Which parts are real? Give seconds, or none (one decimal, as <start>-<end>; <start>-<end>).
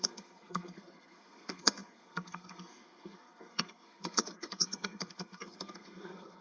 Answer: none